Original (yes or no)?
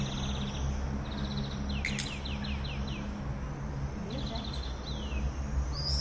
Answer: yes